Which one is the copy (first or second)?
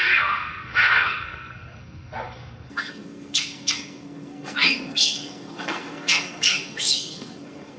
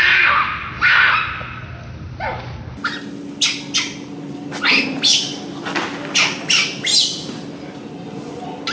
first